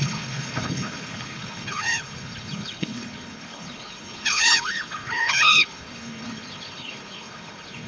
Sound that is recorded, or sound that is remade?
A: remade